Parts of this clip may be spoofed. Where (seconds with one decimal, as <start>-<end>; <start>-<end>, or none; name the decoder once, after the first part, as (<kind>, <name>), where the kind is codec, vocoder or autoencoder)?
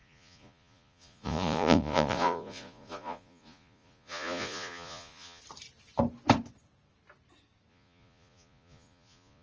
0.0-5.4 (vocoder, Vocos); 7.7-9.4